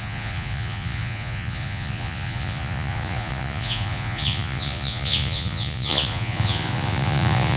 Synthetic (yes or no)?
yes